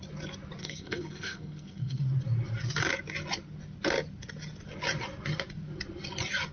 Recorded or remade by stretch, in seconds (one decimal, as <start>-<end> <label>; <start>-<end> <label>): 0.0-0.6 recorded; 0.6-2.0 remade; 2.0-6.5 recorded